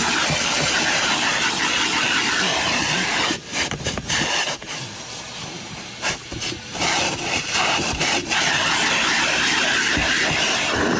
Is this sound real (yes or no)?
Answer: no